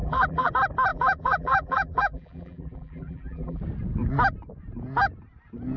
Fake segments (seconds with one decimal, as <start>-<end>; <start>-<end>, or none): 0.0-0.5; 0.9-3.6